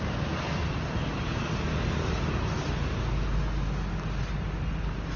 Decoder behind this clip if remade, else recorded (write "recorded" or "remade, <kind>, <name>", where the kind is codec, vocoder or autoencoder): recorded